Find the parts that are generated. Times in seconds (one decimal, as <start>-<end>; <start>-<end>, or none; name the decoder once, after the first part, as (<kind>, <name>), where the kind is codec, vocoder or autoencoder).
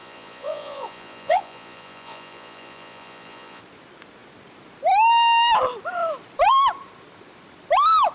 0.0-3.6 (vocoder, Vocos)